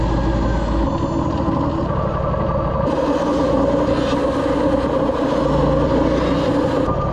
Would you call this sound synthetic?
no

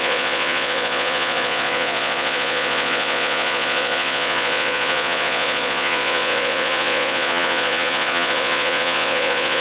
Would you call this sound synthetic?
yes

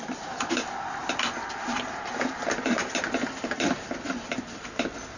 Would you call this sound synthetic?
no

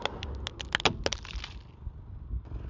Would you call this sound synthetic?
no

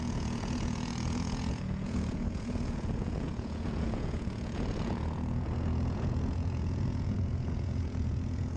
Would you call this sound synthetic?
yes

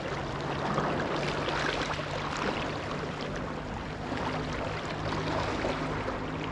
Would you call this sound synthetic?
no